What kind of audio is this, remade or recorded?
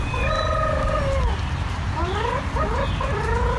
recorded